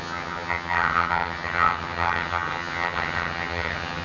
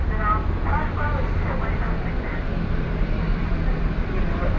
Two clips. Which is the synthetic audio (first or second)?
first